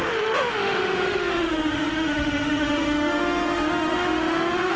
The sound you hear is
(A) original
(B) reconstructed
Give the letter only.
B